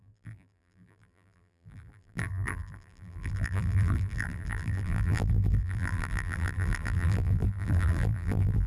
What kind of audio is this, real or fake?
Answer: fake